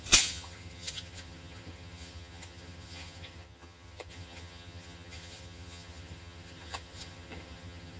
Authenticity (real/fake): fake